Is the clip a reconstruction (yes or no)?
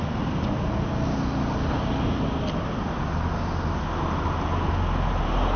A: no